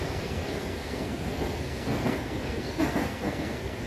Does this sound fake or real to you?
fake